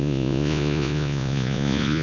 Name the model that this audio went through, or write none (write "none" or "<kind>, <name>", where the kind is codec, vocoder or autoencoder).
vocoder, Vocos